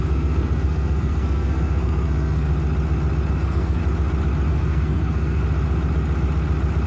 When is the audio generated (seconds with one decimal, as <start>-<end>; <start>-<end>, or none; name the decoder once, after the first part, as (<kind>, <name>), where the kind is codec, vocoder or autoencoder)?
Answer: 0.0-2.5 (codec, SNAC); 3.3-3.8; 4.5-5.4